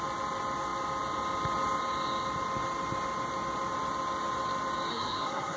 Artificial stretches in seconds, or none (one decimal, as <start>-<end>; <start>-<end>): 4.9-5.6